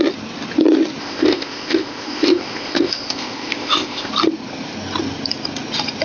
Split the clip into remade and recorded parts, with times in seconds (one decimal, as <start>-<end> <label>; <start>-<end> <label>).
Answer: 0.0-1.0 recorded; 1.0-4.1 remade; 4.1-6.0 recorded